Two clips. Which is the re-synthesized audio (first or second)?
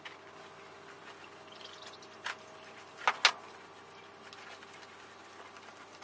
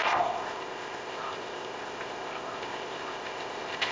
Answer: second